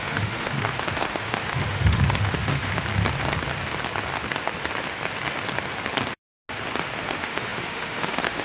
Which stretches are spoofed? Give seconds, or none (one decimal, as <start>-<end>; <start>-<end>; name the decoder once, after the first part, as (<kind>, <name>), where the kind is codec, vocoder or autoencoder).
0.0-2.7 (autoencoder, DAC-VAE); 7.0-8.4